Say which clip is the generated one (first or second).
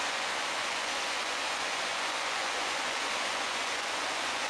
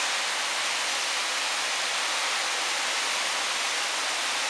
first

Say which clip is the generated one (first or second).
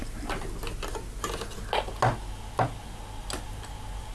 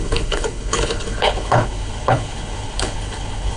second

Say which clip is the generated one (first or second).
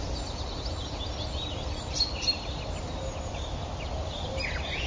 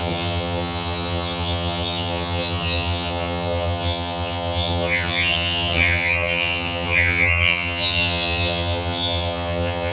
second